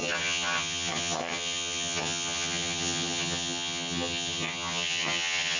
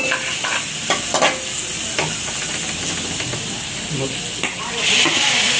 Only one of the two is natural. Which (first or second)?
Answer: second